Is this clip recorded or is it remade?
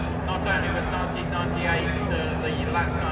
recorded